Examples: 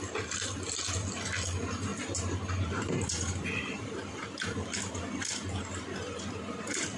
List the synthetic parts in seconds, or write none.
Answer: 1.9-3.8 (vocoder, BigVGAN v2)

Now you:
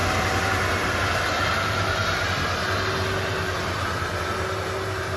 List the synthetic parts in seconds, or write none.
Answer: none